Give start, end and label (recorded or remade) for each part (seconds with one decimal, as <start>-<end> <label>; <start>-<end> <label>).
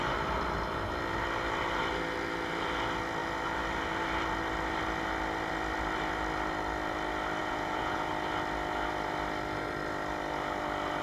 0.0-7.4 recorded; 7.4-8.1 remade; 8.1-11.0 recorded